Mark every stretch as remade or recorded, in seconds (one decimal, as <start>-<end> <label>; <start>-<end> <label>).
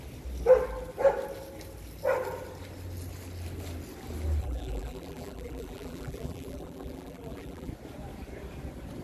0.0-4.4 recorded; 4.4-7.7 remade; 7.7-9.0 recorded